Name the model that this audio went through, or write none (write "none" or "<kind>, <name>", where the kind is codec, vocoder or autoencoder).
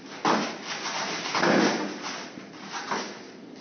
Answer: none